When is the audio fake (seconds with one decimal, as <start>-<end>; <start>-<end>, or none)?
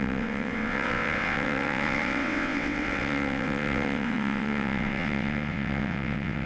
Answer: 0.0-6.5